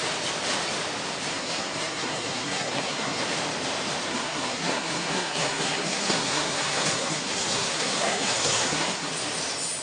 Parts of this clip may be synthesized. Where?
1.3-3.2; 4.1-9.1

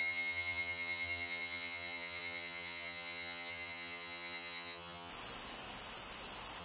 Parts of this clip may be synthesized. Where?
0.0-5.1

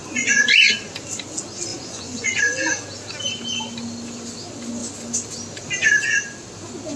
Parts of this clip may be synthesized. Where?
0.0-0.7; 1.7-2.4

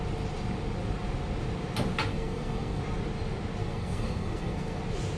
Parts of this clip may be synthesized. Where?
2.1-2.8; 3.6-4.8

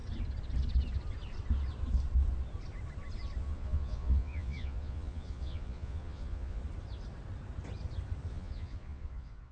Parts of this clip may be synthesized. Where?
3.4-6.6; 8.3-9.5

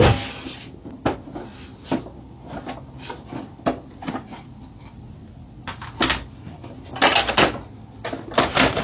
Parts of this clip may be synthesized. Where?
1.5-5.3

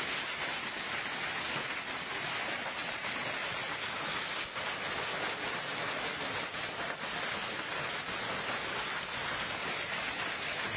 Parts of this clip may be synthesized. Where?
none